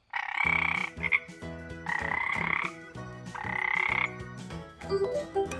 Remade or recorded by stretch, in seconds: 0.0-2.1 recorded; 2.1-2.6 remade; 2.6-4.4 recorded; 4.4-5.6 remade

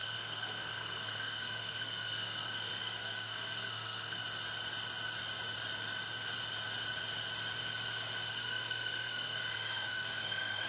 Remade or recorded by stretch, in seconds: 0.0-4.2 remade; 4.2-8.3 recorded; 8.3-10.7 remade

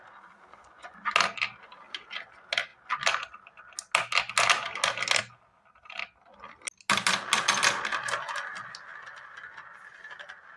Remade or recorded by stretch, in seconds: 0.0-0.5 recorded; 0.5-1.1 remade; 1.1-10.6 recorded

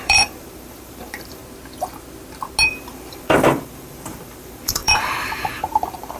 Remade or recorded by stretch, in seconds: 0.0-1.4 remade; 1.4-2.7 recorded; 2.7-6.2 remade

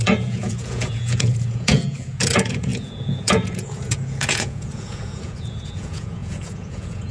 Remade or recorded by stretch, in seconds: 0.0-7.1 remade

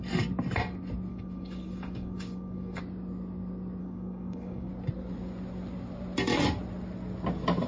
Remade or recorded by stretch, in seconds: 0.0-1.1 recorded; 1.1-2.8 remade; 2.8-3.8 recorded; 3.8-4.7 remade; 4.7-7.7 recorded

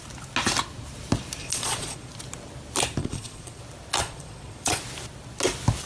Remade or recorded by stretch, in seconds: 0.0-1.4 recorded; 1.4-2.1 remade; 2.1-3.0 recorded; 3.0-3.6 remade; 3.6-4.0 recorded; 4.0-4.8 remade; 4.8-5.9 recorded